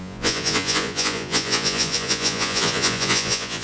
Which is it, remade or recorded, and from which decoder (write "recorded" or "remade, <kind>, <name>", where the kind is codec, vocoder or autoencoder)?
remade, vocoder, Vocos